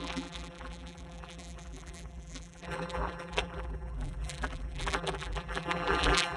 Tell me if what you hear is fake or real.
fake